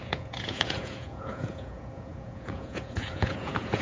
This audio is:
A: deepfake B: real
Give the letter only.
A